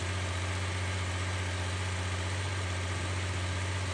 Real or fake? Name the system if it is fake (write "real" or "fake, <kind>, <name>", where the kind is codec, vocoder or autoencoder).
real